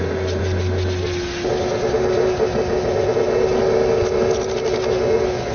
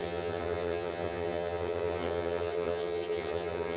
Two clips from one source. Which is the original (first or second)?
first